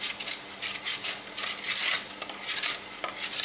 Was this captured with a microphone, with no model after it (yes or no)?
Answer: yes